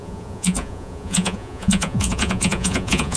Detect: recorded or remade remade